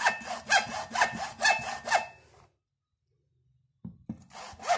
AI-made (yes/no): no